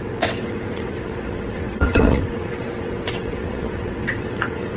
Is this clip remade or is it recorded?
remade